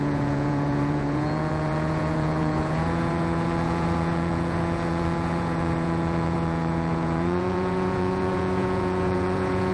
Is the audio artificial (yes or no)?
yes